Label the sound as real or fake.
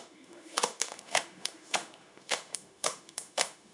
fake